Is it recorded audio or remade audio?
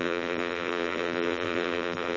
remade